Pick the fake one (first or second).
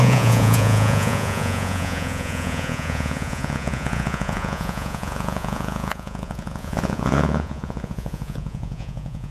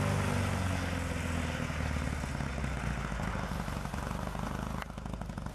first